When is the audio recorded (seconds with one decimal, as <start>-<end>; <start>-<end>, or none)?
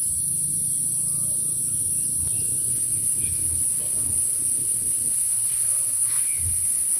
0.0-2.7